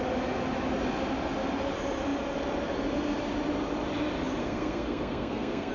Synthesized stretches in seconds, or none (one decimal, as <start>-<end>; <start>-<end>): 4.4-5.7